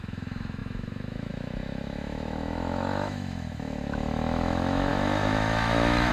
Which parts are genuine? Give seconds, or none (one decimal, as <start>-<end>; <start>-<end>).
none